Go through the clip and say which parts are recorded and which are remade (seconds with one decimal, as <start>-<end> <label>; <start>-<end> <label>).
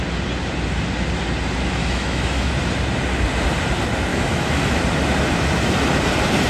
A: 0.0-1.8 recorded; 1.8-2.5 remade; 2.5-4.1 recorded; 4.1-4.8 remade; 4.8-6.5 recorded